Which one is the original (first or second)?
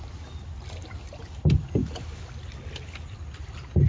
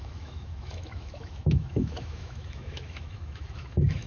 first